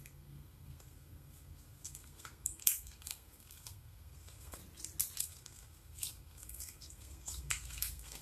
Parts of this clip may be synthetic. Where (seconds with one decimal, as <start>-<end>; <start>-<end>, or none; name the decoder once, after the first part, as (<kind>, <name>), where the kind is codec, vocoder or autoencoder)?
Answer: 0.0-4.6 (codec, SNAC); 5.2-8.2